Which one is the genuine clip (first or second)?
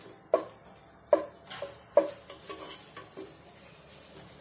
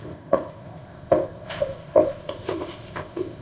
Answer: first